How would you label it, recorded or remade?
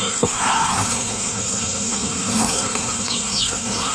remade